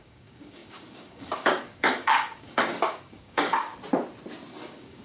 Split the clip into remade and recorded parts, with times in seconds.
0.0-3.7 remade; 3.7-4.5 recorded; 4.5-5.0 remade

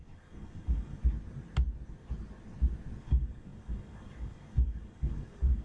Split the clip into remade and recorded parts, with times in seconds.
0.0-1.0 remade; 1.0-3.0 recorded; 3.0-5.6 remade

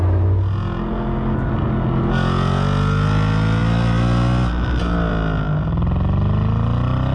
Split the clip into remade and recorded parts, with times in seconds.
0.0-7.1 recorded

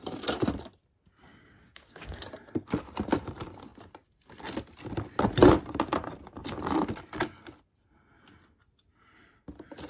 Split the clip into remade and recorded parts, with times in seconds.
0.0-1.3 recorded; 1.3-2.2 remade; 2.2-9.9 recorded

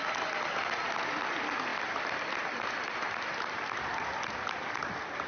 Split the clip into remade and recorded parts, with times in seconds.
0.0-5.3 recorded

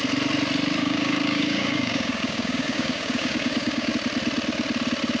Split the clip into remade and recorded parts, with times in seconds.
0.0-0.8 recorded; 0.8-3.9 remade; 3.9-5.2 recorded

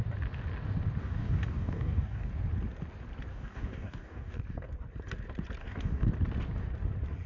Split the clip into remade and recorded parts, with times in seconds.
0.0-1.0 recorded; 1.0-2.3 remade; 2.3-3.3 recorded; 3.3-4.4 remade; 4.4-5.6 recorded; 5.6-6.1 remade; 6.1-7.3 recorded